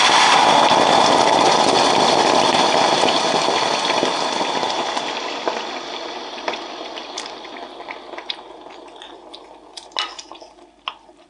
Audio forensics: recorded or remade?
recorded